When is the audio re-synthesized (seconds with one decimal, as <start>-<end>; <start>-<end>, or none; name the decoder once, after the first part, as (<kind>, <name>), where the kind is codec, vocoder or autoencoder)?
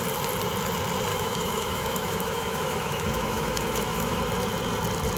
1.1-4.2 (autoencoder, DAC-VAE)